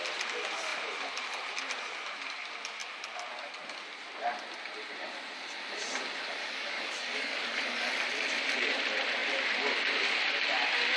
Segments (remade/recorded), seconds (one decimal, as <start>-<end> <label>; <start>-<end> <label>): 0.0-6.4 recorded; 6.4-7.9 remade; 7.9-11.0 recorded